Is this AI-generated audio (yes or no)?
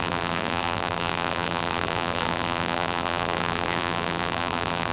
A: yes